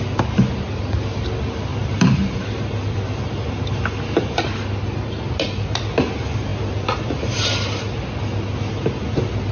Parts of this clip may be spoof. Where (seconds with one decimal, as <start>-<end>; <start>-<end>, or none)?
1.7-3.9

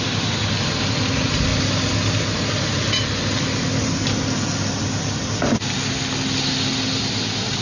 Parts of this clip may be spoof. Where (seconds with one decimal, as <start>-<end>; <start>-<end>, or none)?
none

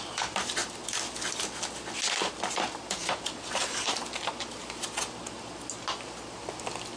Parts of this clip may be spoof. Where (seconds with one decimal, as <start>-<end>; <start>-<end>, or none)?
3.0-3.9